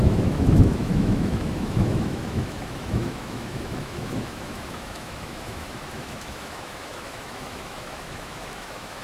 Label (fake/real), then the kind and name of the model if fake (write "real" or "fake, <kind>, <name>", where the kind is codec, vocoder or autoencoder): fake, autoencoder, DAC-VAE